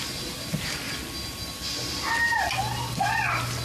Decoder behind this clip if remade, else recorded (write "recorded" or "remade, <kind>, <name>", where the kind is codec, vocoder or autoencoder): recorded